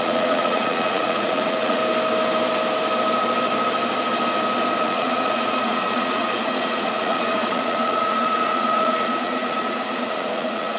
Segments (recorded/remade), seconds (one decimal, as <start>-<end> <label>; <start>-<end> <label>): 0.0-1.8 remade; 1.8-4.8 recorded; 4.8-10.8 remade